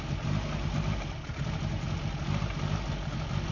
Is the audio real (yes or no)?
yes